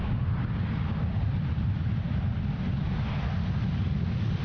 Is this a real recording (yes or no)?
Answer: yes